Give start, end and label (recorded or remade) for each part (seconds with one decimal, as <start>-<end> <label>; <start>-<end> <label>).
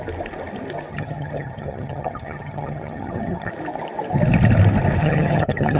0.0-0.9 recorded; 0.9-3.5 remade; 3.5-5.0 recorded; 5.0-5.8 remade